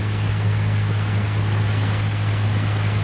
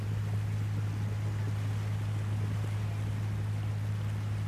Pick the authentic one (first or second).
second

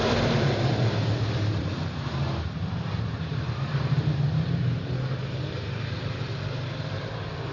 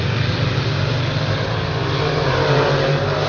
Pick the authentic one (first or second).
second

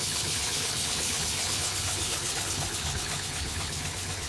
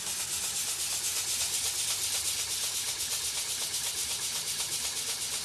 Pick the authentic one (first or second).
second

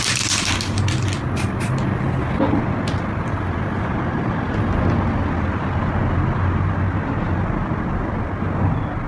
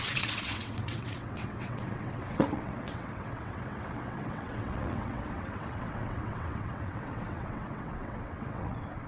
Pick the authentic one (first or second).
first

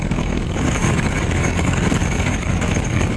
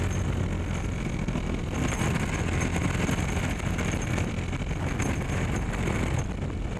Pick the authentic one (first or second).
second